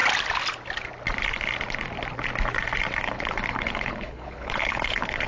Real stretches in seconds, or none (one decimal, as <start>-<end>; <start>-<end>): 0.0-3.0